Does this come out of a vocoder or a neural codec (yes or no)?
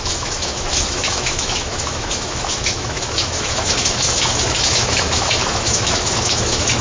yes